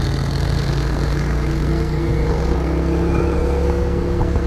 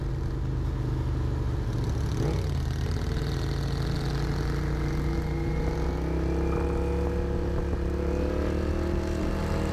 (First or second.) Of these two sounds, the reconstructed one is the first